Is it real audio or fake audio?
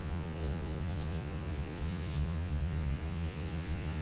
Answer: fake